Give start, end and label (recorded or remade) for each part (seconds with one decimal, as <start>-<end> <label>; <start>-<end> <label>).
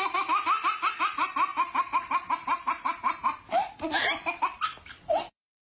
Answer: 0.0-5.7 recorded